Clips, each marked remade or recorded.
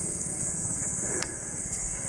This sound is remade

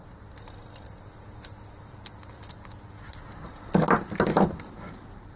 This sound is recorded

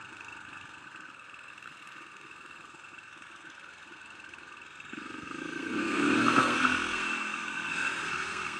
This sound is remade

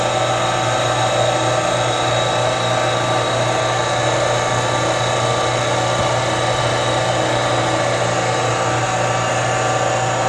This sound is recorded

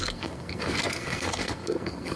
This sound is remade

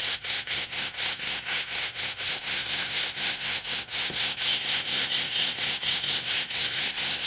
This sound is remade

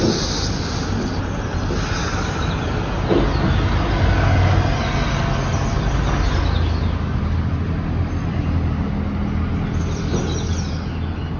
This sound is recorded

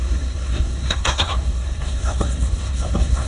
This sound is remade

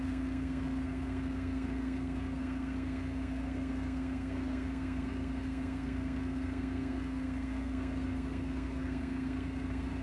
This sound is remade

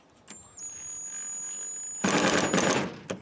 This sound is recorded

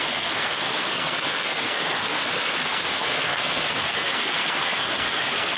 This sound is remade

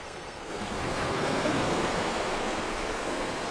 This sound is remade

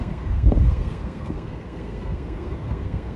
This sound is remade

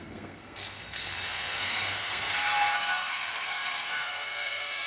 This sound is remade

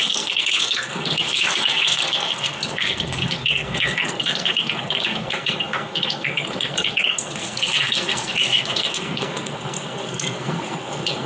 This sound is remade